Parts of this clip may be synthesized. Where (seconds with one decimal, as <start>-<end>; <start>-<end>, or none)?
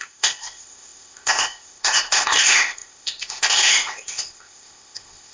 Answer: 0.0-5.3